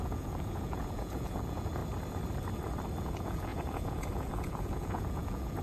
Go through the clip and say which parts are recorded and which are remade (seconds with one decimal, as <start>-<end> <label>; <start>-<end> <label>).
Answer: 0.0-1.8 remade; 1.8-3.0 recorded; 3.0-5.6 remade